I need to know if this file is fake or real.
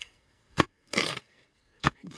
fake